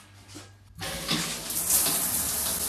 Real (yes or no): yes